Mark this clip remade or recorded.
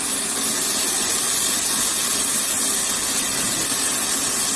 recorded